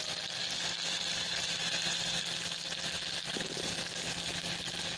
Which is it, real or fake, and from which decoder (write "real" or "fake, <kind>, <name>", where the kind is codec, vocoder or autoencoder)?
real